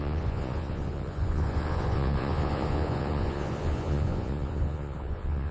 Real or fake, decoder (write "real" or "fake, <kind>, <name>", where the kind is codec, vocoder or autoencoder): fake, vocoder, Vocos